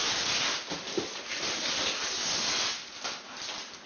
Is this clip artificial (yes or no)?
no